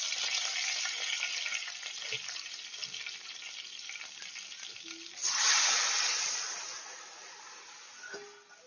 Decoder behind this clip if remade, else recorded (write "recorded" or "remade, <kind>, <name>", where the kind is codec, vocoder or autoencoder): recorded